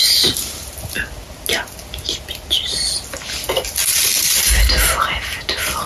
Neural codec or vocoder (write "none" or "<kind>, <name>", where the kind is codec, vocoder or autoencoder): none